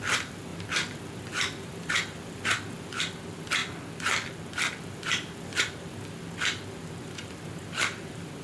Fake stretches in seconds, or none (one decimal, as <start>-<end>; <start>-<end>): 0.0-3.6; 4.7-8.4